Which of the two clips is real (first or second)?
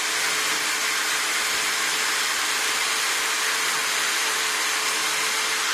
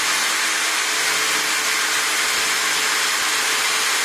second